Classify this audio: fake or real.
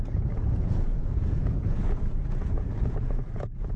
fake